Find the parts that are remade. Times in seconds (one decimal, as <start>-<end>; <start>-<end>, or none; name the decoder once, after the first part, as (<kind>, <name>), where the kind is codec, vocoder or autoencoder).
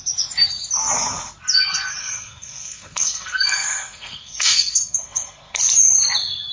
2.0-5.6 (codec, SNAC)